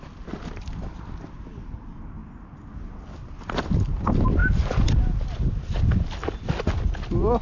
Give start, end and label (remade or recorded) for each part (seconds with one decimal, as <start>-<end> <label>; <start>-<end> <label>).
0.0-7.4 recorded